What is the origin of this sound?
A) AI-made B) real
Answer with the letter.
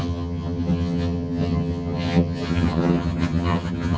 A